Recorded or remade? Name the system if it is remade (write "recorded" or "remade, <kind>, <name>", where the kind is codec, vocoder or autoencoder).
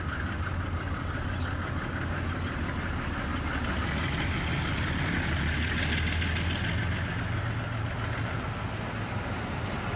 recorded